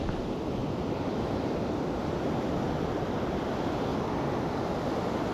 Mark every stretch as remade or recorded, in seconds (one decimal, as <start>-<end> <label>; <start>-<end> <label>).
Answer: 0.0-0.6 recorded; 0.6-2.1 remade; 2.1-3.9 recorded; 3.9-4.4 remade; 4.4-5.3 recorded